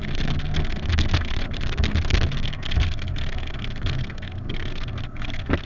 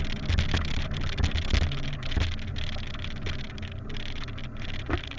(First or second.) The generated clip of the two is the first